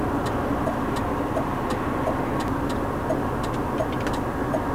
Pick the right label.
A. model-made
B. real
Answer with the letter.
B